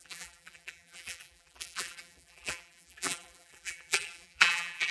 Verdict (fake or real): fake